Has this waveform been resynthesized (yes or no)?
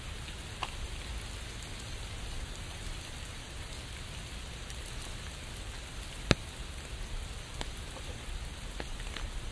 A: no